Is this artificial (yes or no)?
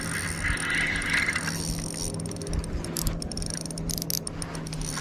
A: no